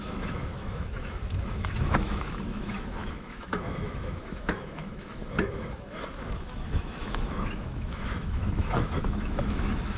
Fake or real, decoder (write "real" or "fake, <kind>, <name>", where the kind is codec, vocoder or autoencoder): fake, autoencoder, DAC-VAE